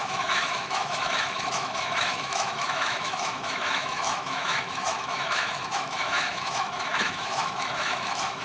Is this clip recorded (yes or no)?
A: no